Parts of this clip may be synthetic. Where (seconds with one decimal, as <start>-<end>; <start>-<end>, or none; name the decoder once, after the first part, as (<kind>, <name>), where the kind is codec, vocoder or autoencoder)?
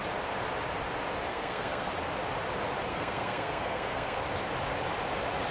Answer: 1.3-1.9 (codec, SNAC); 2.9-4.2